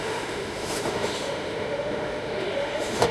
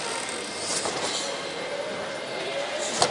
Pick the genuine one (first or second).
second